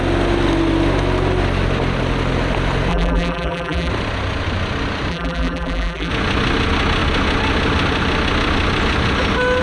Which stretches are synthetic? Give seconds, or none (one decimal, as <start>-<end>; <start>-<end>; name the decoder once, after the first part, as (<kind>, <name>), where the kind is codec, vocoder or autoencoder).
2.9-3.9 (vocoder, BigVGAN v2); 5.1-6.1

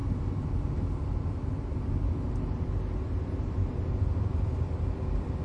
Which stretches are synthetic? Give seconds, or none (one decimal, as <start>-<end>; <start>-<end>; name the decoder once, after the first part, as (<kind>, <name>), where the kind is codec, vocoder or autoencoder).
3.2-5.4 (vocoder, BigVGAN v2)

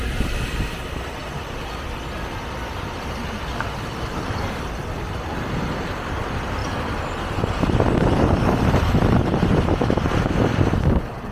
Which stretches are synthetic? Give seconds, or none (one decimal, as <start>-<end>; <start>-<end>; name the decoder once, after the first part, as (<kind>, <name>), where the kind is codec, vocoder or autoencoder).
0.0-6.6 (vocoder, BigVGAN v2); 8.2-11.3

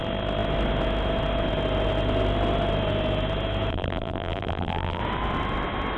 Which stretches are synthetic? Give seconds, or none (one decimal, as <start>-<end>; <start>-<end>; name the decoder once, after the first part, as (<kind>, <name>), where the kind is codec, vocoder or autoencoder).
3.7-5.0 (vocoder, BigVGAN v2)

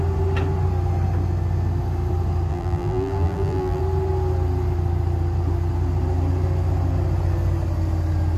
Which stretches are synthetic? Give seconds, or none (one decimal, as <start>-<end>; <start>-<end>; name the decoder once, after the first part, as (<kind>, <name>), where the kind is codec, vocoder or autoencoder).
2.5-3.8 (vocoder, BigVGAN v2)

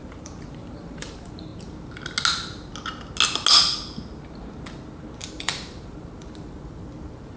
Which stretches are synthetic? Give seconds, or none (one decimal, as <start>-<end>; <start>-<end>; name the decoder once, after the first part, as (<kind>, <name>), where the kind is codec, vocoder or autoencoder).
0.0-1.5 (vocoder, BigVGAN v2); 5.3-7.4